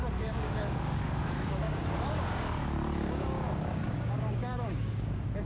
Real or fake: fake